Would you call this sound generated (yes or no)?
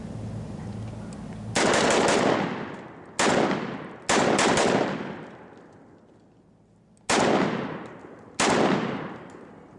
no